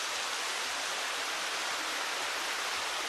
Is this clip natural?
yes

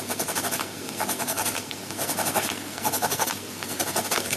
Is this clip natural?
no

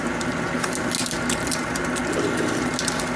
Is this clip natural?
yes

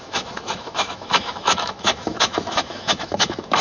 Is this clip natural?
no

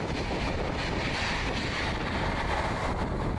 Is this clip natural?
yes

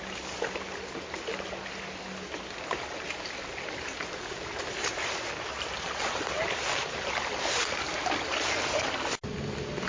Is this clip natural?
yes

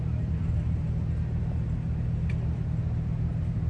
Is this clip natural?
yes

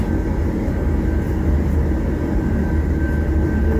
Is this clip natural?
yes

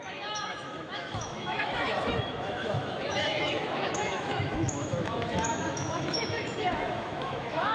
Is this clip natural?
no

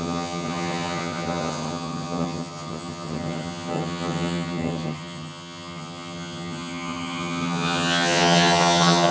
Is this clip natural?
no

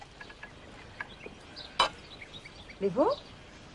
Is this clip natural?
yes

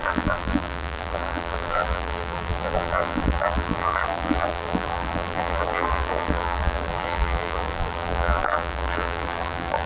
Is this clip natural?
no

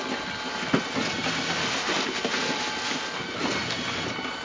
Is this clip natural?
yes